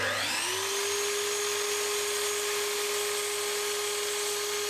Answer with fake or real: real